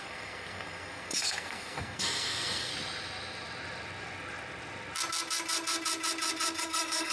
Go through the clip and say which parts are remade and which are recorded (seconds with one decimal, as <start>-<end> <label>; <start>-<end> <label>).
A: 0.0-2.7 remade; 2.7-6.6 recorded; 6.6-7.1 remade